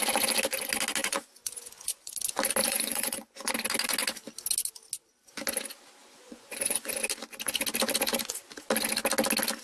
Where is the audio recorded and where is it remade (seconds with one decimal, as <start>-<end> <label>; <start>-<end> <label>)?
0.0-1.0 recorded; 1.0-2.1 remade; 2.1-2.6 recorded; 2.6-3.5 remade; 3.5-6.0 recorded; 6.0-6.9 remade; 6.9-9.6 recorded